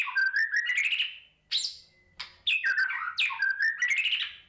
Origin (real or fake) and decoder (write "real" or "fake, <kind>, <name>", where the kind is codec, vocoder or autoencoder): real